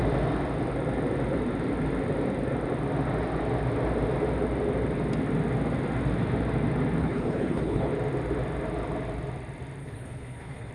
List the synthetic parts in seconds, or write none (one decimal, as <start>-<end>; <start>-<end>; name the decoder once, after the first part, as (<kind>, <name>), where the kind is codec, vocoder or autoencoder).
7.0-7.9 (codec, HILCodec); 9.8-10.7